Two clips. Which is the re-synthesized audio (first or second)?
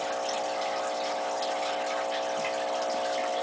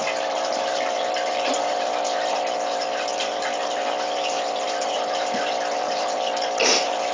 second